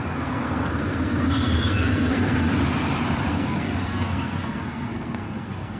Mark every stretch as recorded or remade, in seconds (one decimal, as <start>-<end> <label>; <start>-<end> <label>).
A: 0.0-2.5 remade; 2.5-3.3 recorded; 3.3-5.8 remade